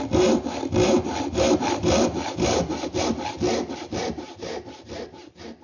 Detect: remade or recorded recorded